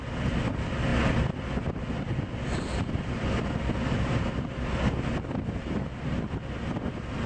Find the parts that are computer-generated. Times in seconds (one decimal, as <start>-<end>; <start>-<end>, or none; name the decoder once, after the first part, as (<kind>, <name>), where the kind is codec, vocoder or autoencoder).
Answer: none